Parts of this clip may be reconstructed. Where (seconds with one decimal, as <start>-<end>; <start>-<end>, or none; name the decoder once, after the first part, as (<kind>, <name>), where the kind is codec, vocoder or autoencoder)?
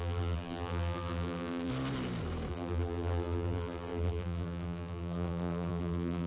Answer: 0.0-1.7 (vocoder, BigVGAN v2); 2.5-6.3